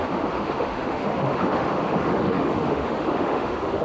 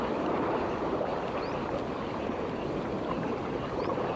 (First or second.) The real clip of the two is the second